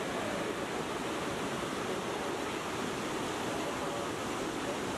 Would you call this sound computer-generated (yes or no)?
no